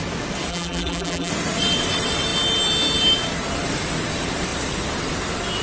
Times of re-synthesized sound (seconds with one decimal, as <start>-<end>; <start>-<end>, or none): 0.5-1.3